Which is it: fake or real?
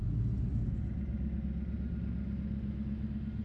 real